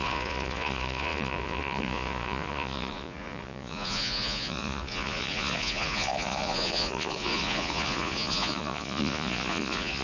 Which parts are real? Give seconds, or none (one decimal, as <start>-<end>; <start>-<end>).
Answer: none